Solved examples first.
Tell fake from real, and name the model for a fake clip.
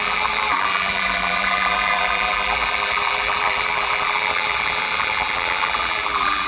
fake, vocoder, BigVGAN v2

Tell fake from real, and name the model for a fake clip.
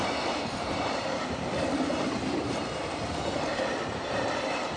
fake, vocoder, BigVGAN v2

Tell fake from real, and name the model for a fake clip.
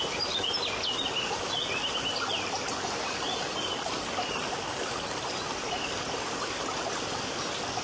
real